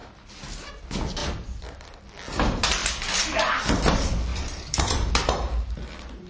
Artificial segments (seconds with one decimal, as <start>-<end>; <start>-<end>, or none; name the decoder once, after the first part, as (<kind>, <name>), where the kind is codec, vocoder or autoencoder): 1.2-2.0 (vocoder, BigVGAN v2); 2.8-3.6; 4.3-5.1